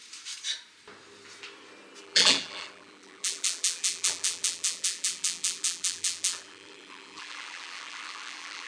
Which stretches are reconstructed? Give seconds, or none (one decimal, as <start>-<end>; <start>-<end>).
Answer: 2.0-8.7